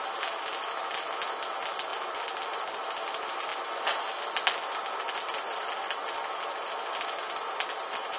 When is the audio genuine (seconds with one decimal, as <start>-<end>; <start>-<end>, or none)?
0.0-8.2